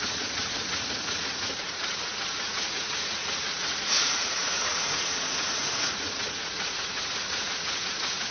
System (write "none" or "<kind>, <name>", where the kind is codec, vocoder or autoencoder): vocoder, Vocos